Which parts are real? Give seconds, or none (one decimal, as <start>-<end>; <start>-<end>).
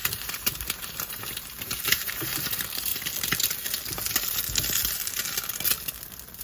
2.9-6.4